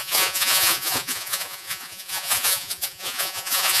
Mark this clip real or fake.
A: fake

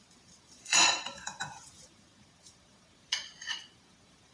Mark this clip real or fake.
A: fake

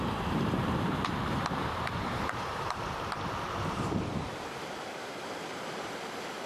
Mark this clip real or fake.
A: fake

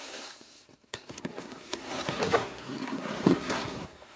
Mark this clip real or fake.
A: fake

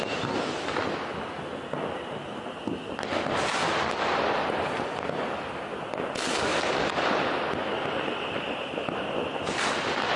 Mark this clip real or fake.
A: real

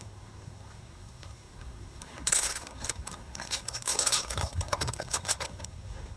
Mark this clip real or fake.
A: fake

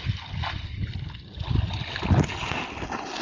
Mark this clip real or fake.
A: real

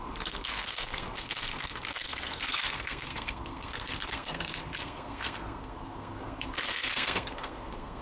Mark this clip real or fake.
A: fake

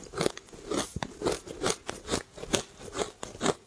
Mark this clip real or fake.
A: real